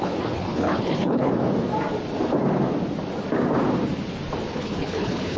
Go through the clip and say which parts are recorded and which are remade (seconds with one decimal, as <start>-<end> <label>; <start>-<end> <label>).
0.0-1.3 remade; 1.3-4.5 recorded; 4.5-5.4 remade